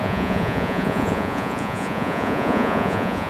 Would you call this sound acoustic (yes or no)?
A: no